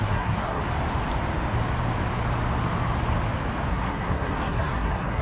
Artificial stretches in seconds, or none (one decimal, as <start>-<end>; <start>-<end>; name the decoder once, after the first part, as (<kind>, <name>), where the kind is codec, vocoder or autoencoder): 0.0-0.6 (codec, SNAC); 3.7-5.2